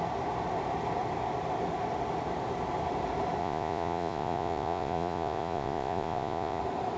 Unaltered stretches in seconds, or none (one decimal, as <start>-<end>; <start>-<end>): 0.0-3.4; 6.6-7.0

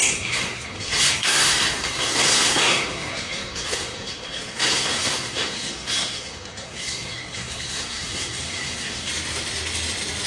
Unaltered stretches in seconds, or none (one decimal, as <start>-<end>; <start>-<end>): 9.1-10.3

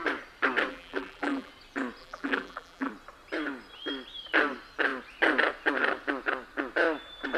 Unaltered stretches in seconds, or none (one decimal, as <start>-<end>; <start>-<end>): 0.0-0.7; 1.5-2.0; 2.9-7.4